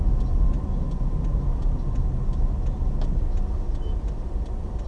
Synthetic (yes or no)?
no